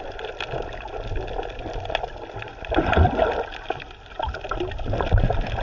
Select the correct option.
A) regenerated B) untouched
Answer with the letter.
B